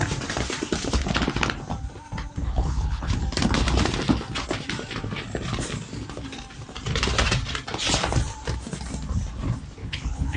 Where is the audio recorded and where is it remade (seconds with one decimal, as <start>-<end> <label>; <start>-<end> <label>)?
0.0-2.4 recorded; 2.4-3.2 remade; 3.2-9.8 recorded; 9.8-10.4 remade